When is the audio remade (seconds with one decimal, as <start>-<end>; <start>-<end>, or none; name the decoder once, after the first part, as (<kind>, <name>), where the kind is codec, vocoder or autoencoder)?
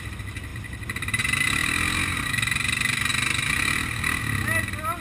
0.5-1.2 (vocoder, BigVGAN v2)